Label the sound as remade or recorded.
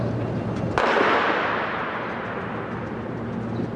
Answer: recorded